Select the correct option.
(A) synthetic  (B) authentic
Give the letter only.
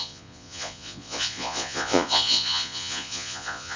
A